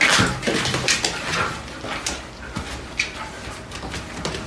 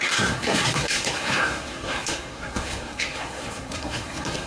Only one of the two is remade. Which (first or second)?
second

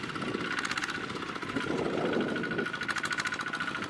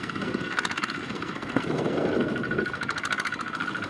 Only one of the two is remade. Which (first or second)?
second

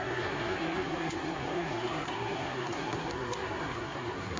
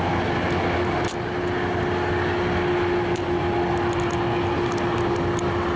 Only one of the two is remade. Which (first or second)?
first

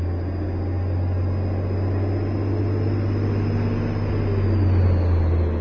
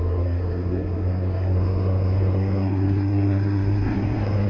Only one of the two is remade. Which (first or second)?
second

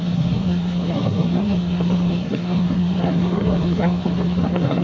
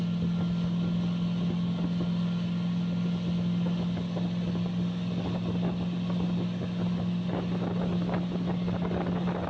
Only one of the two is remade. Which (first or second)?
first